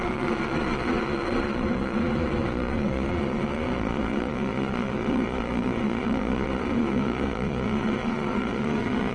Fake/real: fake